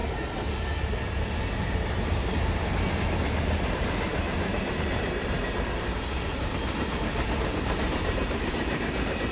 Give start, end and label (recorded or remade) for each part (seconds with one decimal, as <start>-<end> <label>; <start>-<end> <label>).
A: 0.0-3.0 recorded; 3.0-9.3 remade